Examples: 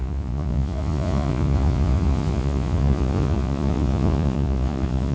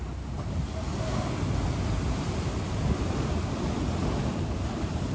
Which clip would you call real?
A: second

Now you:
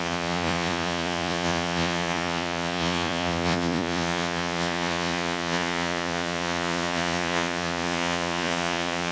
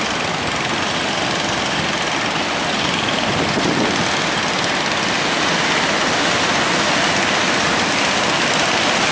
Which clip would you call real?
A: second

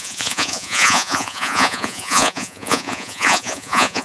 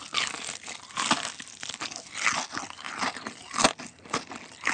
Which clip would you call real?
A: second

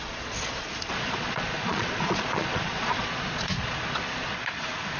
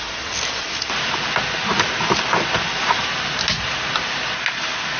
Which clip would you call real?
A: second